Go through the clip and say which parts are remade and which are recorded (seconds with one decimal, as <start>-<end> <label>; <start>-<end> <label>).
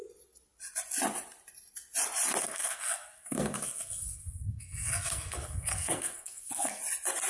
0.0-2.4 recorded; 2.4-6.8 remade; 6.8-7.3 recorded